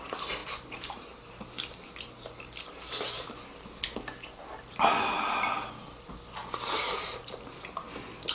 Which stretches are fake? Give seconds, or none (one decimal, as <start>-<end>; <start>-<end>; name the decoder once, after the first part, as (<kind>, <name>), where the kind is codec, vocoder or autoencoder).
0.4-1.7 (vocoder, BigVGAN v2); 6.4-7.8